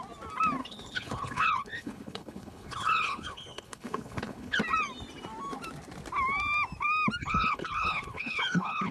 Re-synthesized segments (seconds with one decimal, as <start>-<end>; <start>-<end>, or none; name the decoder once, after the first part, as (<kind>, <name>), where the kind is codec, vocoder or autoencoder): 0.6-4.6 (codec, HILCodec); 7.2-8.9